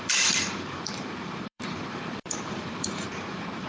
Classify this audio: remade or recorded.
remade